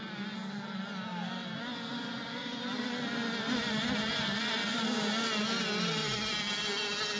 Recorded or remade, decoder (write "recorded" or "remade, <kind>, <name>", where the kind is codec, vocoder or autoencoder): recorded